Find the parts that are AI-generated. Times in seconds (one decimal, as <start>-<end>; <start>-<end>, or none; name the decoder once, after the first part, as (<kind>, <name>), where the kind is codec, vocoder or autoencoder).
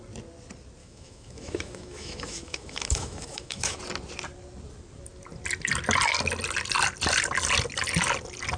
0.8-3.8 (autoencoder, DAC-VAE)